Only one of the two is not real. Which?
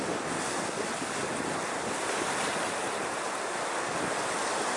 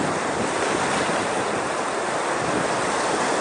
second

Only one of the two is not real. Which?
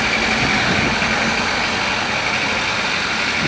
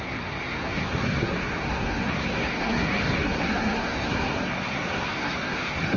second